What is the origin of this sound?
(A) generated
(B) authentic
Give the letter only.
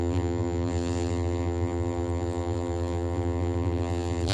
A